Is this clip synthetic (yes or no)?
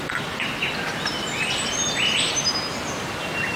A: no